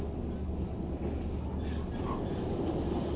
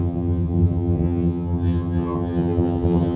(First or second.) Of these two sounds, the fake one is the second